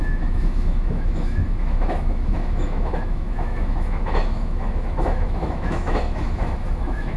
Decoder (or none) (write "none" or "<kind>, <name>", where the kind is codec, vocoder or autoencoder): autoencoder, DAC-VAE